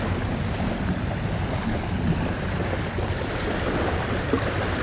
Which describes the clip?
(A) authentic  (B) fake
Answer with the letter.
A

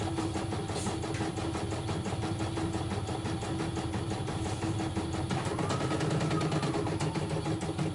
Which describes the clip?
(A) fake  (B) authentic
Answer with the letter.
B